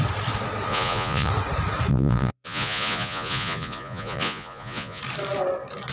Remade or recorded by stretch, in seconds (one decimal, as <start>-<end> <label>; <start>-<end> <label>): 0.0-0.7 recorded; 0.7-1.3 remade; 1.3-1.9 recorded; 1.9-5.0 remade; 5.0-5.9 recorded